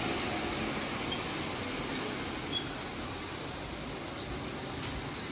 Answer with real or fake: real